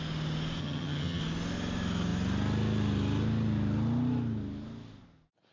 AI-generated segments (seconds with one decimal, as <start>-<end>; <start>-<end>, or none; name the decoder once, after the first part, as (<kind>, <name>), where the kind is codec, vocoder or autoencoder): 0.6-1.2 (vocoder, HiFi-GAN)